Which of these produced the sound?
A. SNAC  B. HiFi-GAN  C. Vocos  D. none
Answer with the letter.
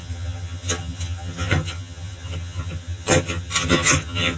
B